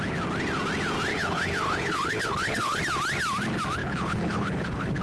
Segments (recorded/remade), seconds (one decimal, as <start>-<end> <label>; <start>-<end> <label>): 0.0-1.1 recorded; 1.1-2.8 remade; 2.8-3.8 recorded; 3.8-5.0 remade